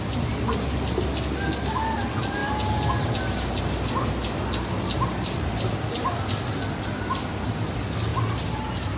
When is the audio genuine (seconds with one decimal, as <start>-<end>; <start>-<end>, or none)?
0.0-9.0